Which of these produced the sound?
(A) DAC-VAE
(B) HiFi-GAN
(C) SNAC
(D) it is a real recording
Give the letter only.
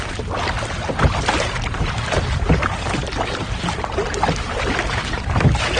D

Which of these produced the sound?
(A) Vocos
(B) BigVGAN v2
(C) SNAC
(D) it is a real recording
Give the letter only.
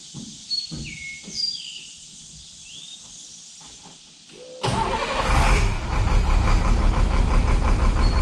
D